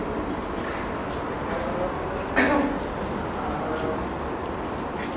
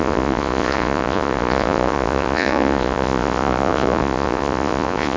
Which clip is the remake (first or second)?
second